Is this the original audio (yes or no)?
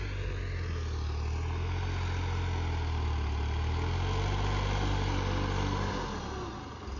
yes